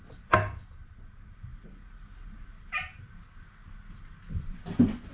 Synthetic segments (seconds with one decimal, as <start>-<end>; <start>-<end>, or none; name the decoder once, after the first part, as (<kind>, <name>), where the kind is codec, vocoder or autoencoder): none